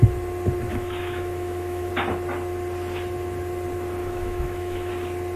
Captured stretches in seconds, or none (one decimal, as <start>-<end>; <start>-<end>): 0.0-0.7; 1.9-4.0; 4.9-5.4